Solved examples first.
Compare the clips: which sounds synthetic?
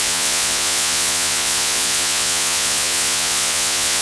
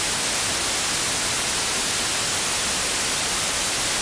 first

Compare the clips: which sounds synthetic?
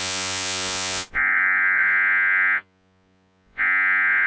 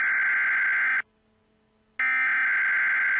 first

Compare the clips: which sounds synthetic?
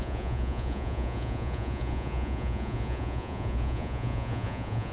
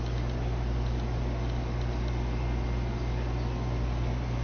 first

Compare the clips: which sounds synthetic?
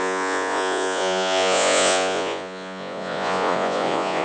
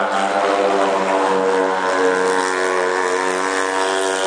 first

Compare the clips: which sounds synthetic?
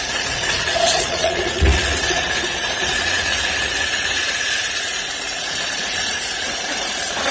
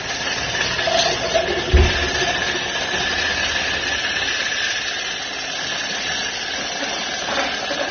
first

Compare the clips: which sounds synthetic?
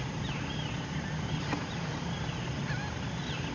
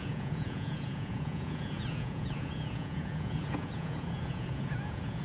second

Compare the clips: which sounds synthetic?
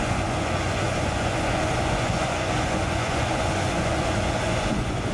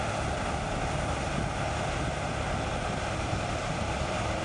first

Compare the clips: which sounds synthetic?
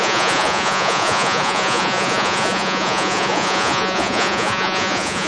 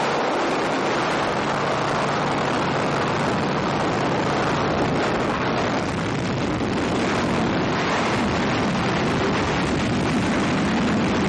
first